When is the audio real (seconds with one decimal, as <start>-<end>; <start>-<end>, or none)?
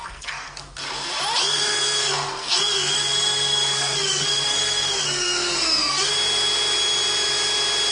0.6-1.4; 6.1-7.9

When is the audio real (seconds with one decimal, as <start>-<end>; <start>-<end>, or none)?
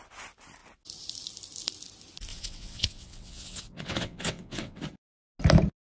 0.0-2.3; 4.8-5.8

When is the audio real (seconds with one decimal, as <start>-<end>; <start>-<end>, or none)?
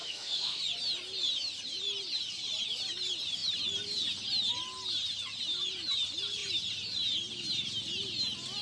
0.6-8.6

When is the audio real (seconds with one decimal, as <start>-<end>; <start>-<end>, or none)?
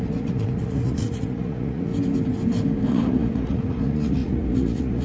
1.9-2.9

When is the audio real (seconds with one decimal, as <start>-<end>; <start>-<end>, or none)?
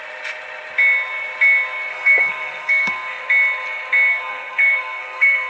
0.0-1.9; 3.2-4.1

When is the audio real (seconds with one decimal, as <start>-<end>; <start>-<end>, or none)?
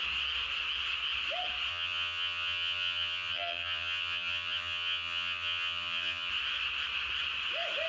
0.0-1.7; 6.3-7.9